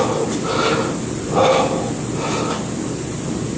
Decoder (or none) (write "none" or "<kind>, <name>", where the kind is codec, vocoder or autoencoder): none